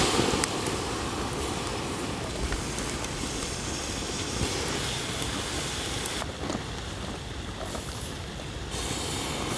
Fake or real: fake